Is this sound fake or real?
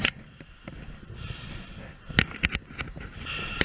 real